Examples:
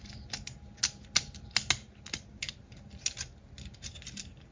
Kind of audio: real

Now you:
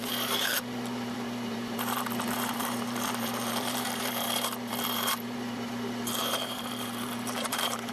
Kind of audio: fake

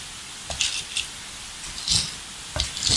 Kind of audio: real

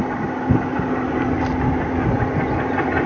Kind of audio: real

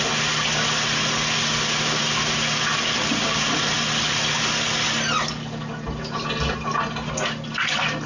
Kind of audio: real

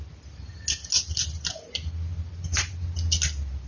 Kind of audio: real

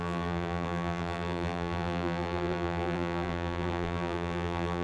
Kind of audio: fake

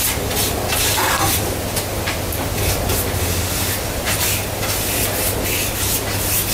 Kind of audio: real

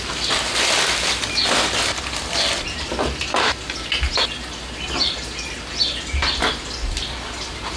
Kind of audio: real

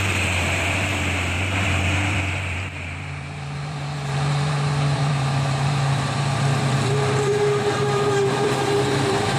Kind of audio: fake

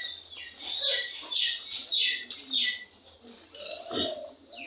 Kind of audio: real